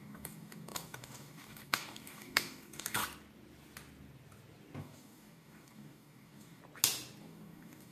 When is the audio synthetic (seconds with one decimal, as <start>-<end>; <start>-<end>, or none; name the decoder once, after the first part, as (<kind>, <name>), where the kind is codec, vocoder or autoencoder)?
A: 0.0-3.0 (codec, DAC); 4.8-6.6; 7.2-7.9